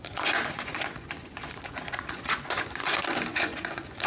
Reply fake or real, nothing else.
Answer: fake